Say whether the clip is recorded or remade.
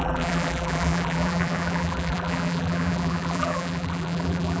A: remade